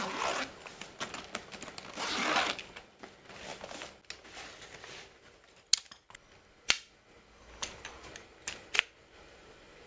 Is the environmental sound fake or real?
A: real